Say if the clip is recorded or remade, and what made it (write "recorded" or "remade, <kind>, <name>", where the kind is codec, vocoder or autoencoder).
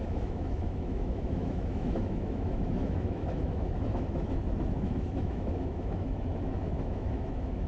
remade, autoencoder, DAC-VAE